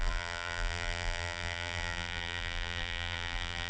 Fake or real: fake